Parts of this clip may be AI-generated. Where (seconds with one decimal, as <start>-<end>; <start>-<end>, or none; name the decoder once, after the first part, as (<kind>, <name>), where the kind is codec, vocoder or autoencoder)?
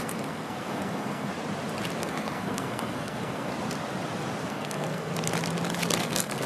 0.0-1.3 (codec, SNAC); 2.0-3.5; 4.5-5.1; 6.0-6.5